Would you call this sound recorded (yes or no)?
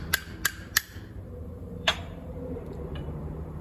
no